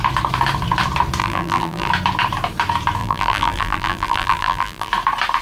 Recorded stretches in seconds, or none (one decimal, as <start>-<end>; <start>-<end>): 0.0-1.2; 1.9-3.0; 4.9-5.4